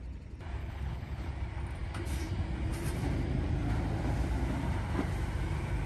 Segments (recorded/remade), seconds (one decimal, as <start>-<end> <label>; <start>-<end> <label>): 0.0-0.6 recorded; 0.6-1.3 remade; 1.3-5.9 recorded